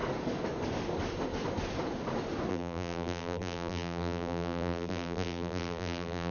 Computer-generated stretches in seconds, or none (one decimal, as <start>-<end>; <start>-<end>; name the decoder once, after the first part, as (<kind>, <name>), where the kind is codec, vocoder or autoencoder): 2.5-6.3 (vocoder, BigVGAN v2)